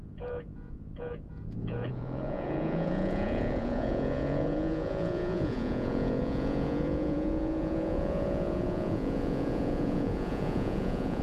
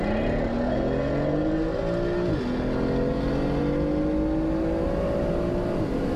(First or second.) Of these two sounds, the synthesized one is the first